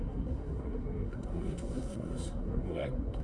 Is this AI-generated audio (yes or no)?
yes